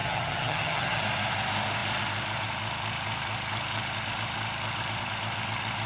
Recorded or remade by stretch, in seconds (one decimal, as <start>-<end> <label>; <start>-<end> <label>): 0.0-1.0 remade; 1.0-5.9 recorded